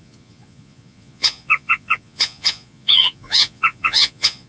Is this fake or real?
fake